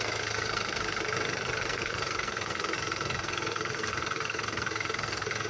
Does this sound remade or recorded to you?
remade